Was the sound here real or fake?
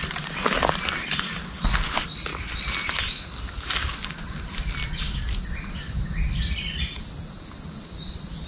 real